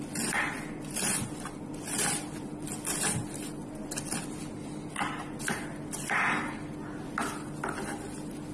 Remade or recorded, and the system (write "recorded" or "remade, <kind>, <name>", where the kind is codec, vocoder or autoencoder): recorded